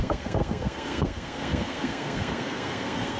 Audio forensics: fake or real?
fake